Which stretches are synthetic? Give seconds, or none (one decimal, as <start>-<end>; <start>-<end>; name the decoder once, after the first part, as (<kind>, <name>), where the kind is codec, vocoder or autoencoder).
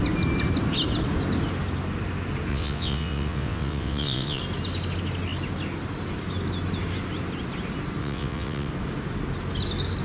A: 2.5-4.4 (vocoder, WaveNeXt); 8.0-8.7